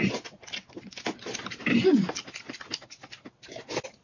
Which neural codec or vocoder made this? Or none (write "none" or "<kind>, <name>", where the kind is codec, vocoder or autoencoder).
none